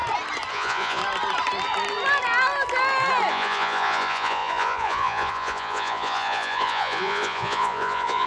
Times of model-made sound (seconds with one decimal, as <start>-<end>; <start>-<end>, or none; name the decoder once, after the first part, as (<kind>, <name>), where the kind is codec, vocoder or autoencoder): 0.5-1.0 (vocoder, Vocos); 3.3-8.3